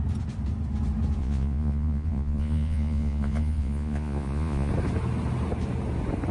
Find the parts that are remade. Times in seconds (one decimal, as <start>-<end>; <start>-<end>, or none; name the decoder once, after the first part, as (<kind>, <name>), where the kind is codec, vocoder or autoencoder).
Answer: 1.2-4.7 (vocoder, Vocos)